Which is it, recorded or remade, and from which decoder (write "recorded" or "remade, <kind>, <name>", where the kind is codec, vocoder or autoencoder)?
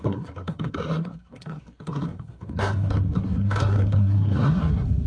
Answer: remade, codec, SNAC